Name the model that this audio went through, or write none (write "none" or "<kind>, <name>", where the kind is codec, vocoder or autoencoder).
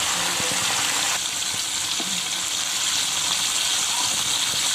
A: none